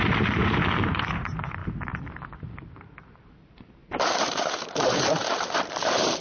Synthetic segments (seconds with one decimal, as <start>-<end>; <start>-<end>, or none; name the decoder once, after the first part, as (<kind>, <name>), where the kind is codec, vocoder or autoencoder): 0.0-6.2 (vocoder, BigVGAN v2)